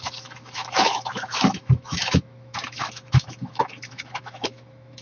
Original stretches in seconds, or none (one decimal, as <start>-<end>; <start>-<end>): none